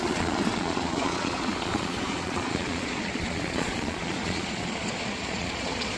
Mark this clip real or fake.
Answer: fake